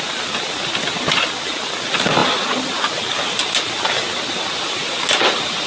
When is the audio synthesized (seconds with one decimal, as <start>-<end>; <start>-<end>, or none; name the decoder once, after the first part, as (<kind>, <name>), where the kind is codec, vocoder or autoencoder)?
none